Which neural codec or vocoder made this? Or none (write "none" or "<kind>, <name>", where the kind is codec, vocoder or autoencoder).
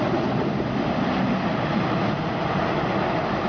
none